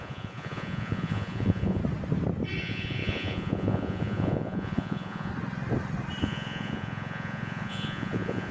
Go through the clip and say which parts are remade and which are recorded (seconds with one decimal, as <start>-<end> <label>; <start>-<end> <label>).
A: 0.0-1.8 remade; 1.8-2.6 recorded; 2.6-5.3 remade; 5.3-6.2 recorded; 6.2-8.5 remade